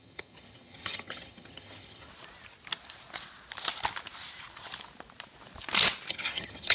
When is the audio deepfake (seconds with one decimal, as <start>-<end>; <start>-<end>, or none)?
0.0-2.1; 6.1-6.7